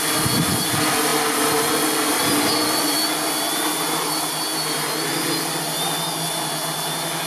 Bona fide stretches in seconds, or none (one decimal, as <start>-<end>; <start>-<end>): 0.0-7.3